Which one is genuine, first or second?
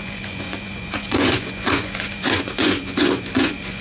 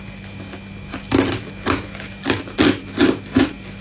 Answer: second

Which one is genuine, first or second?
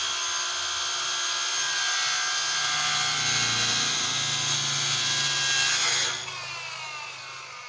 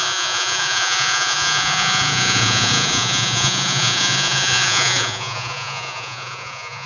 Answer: first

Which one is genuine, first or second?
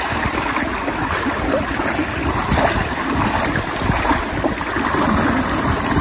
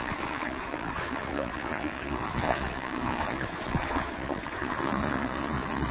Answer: first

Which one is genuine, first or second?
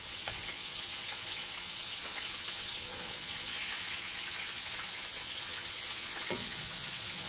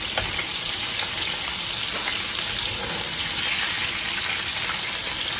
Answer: second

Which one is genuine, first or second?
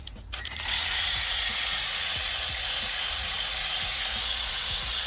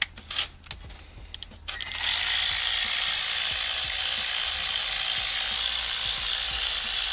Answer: second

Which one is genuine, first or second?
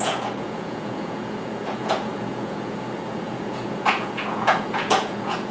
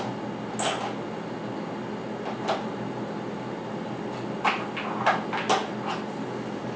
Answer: second